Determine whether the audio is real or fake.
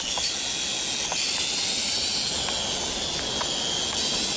real